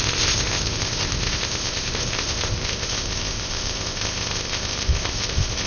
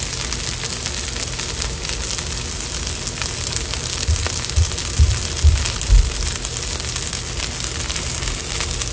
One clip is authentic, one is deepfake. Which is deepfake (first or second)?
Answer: first